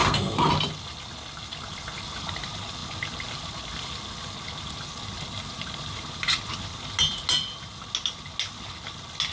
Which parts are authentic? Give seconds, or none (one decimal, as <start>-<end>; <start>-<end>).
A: 0.5-9.3

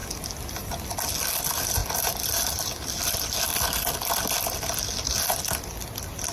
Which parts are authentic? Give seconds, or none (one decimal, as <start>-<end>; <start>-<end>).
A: 0.0-6.3